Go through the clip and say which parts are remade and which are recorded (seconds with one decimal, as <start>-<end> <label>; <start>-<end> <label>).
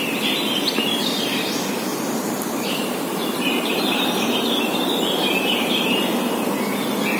0.0-1.9 recorded; 1.9-6.1 remade; 6.1-7.2 recorded